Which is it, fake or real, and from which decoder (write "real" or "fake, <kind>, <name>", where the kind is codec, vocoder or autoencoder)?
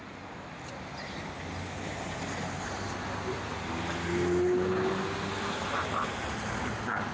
real